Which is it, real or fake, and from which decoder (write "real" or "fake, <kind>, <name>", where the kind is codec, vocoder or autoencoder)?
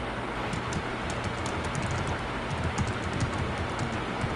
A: real